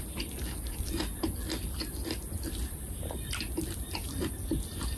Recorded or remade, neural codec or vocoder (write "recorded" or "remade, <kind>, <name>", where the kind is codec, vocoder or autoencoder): recorded